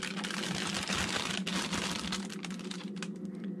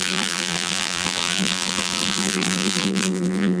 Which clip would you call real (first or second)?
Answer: first